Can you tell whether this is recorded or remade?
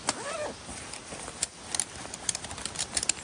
recorded